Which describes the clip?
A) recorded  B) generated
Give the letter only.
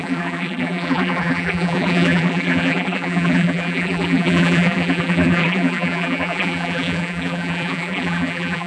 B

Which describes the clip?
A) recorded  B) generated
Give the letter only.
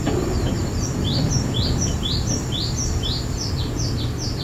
B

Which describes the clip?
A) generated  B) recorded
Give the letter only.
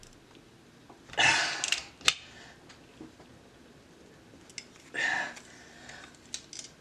B